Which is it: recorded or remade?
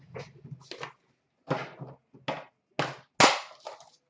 recorded